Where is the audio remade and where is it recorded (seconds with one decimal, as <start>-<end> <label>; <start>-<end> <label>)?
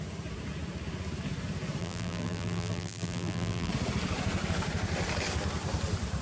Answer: 0.0-1.8 recorded; 1.8-3.7 remade; 3.7-6.2 recorded